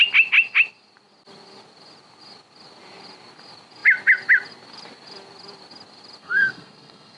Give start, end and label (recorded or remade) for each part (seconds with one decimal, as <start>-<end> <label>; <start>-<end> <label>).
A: 0.0-6.2 recorded; 6.2-7.2 remade